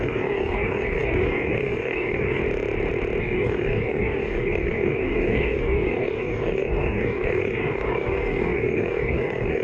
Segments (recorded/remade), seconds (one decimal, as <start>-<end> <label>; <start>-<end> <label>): 0.0-2.4 remade; 2.4-3.2 recorded; 3.2-9.6 remade